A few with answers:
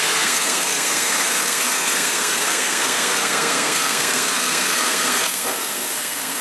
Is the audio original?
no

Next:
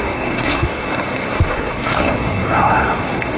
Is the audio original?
no